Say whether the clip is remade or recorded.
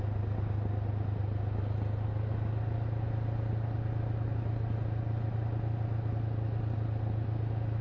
recorded